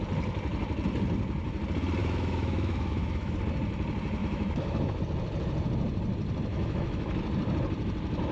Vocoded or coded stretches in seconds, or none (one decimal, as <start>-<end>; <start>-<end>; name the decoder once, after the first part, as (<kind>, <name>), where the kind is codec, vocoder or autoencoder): 2.0-3.4 (autoencoder, DAC-VAE); 4.2-5.0; 6.5-7.1